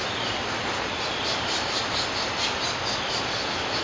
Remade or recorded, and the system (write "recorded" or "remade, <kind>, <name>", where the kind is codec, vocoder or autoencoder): recorded